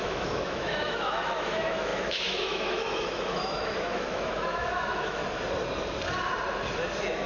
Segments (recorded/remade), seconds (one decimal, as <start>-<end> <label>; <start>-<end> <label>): 0.0-5.2 remade; 5.2-7.3 recorded